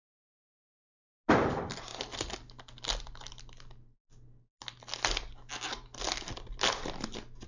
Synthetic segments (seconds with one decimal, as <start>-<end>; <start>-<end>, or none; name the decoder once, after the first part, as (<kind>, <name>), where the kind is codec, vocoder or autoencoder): none